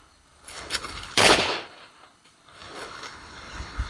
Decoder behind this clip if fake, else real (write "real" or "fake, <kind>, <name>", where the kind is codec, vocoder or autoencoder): fake, codec, HILCodec